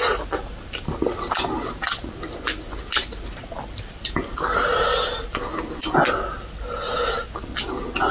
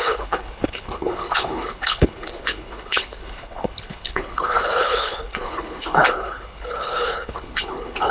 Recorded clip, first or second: first